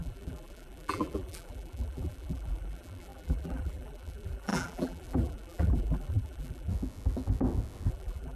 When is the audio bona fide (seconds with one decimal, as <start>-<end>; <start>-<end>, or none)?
6.7-7.9

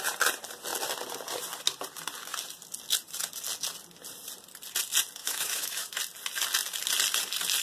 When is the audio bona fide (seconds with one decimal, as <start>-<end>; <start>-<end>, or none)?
0.0-5.2; 6.0-7.6

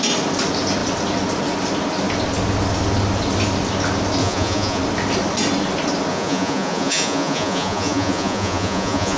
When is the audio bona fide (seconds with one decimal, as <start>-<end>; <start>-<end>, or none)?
0.0-4.2; 4.8-6.1

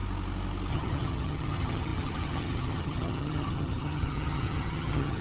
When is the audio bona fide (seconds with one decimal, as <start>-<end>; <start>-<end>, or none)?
0.0-0.7

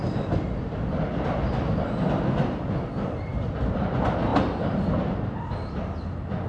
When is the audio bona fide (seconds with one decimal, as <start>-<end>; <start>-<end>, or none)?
0.0-3.3; 3.9-6.5

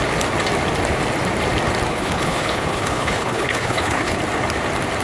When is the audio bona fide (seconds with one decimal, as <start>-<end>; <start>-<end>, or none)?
0.0-1.9; 4.2-5.0

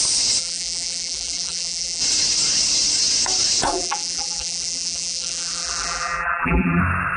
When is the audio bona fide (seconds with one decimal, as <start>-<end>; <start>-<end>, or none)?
0.0-0.4; 2.0-3.7; 6.8-7.2